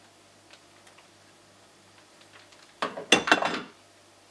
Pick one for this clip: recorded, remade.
recorded